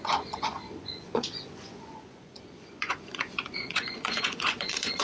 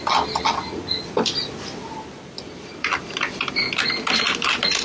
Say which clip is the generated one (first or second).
first